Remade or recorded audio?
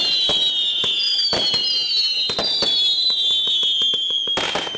recorded